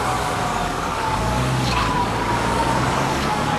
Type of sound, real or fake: fake